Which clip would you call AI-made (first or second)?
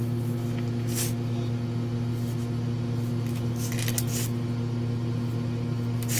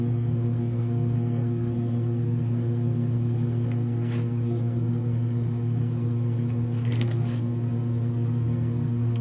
second